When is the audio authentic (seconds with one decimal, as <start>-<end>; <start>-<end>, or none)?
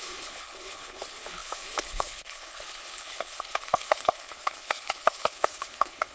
none